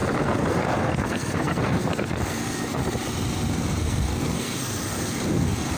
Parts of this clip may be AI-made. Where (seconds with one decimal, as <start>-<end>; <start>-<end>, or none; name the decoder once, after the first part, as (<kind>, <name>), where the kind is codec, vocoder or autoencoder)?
0.0-2.8 (codec, SNAC); 3.5-5.8